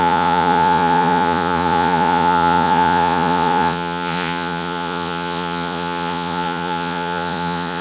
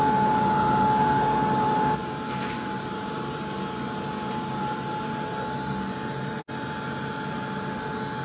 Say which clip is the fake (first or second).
first